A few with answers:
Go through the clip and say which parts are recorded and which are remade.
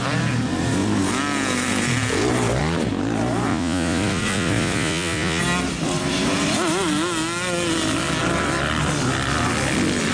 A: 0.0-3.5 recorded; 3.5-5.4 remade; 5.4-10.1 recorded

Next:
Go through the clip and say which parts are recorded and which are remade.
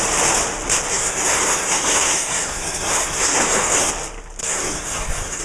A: 0.0-0.9 recorded; 0.9-3.9 remade; 3.9-4.4 recorded; 4.4-5.4 remade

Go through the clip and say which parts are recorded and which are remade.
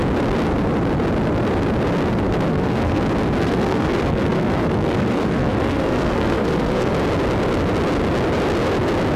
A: 0.0-2.5 recorded; 2.5-3.0 remade; 3.0-3.4 recorded; 3.4-6.9 remade; 6.9-9.2 recorded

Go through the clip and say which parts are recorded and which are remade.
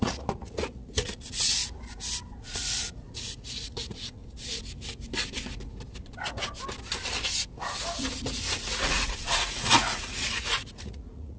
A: 0.0-1.6 remade; 1.6-2.4 recorded; 2.4-4.2 remade; 4.2-8.6 recorded; 8.6-11.4 remade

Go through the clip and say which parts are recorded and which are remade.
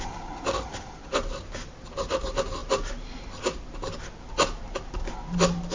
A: 0.0-5.7 recorded